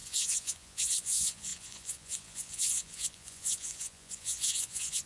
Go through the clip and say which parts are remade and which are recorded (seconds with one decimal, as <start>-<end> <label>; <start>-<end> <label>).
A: 0.0-5.1 remade